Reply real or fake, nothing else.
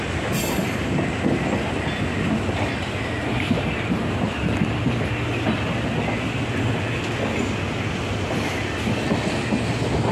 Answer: real